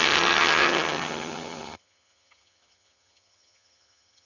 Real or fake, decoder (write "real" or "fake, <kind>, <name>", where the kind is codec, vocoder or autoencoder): fake, vocoder, HiFi-GAN